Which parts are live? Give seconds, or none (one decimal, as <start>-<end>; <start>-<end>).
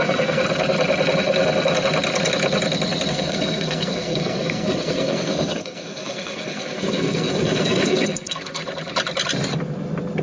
0.4-3.1; 8.6-10.2